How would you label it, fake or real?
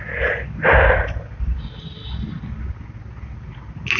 real